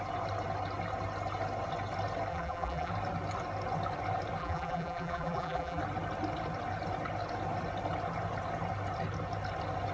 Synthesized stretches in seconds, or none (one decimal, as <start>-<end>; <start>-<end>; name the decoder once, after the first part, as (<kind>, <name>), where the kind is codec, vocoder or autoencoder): 2.3-2.9 (vocoder, BigVGAN v2); 4.4-5.8